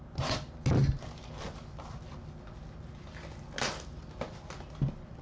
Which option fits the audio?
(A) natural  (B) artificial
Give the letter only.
A